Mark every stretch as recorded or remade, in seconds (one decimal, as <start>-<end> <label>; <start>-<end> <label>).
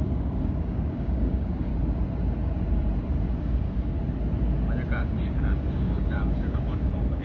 0.0-1.7 remade; 1.7-3.4 recorded; 3.4-4.0 remade; 4.0-5.0 recorded; 5.0-7.2 remade